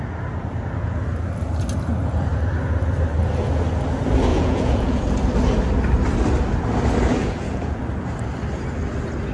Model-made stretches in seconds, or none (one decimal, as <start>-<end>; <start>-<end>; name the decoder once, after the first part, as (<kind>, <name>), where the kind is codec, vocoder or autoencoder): 4.3-5.1 (vocoder, Vocos); 7.2-7.8